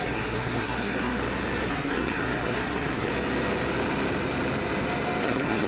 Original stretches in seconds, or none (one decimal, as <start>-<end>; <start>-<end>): 1.2-1.7; 3.1-5.2